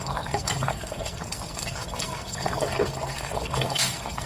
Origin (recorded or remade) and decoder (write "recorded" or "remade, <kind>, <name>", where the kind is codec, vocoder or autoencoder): remade, codec, SNAC